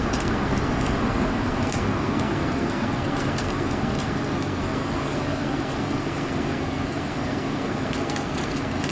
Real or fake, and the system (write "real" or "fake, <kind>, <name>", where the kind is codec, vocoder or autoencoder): fake, codec, SNAC